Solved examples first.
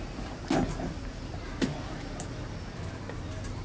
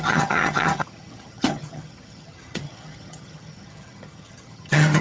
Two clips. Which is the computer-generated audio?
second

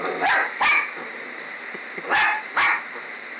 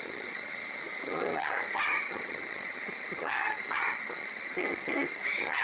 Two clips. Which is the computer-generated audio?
second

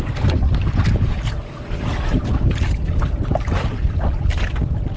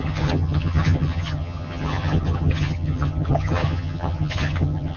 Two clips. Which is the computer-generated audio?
second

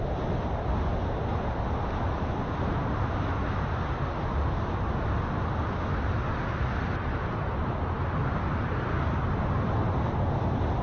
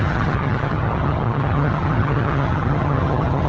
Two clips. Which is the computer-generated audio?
second